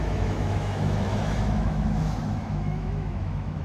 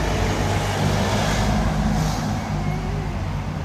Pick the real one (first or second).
second